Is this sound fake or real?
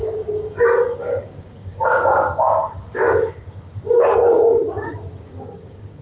fake